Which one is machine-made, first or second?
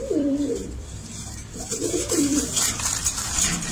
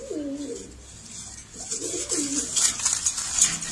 first